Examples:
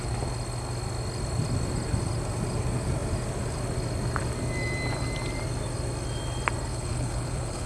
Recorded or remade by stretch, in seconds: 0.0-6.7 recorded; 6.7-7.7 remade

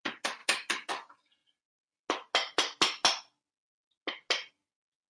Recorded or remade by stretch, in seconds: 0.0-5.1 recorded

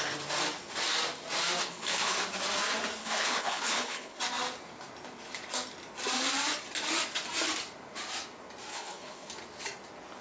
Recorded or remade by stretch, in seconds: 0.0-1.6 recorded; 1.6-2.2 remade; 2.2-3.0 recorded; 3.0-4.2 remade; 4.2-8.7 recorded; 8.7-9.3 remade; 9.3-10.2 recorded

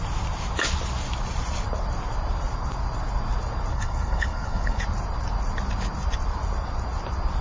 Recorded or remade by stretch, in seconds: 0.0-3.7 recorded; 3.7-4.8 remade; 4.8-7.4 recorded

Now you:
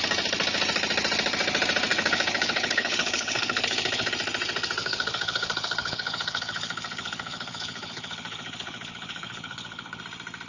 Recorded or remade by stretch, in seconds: 0.0-1.9 recorded; 1.9-4.1 remade; 4.1-4.8 recorded; 4.8-10.0 remade; 10.0-10.5 recorded